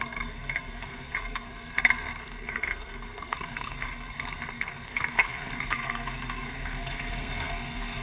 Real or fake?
fake